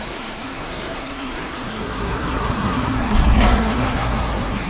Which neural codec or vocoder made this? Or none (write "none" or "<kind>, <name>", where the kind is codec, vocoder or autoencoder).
codec, SNAC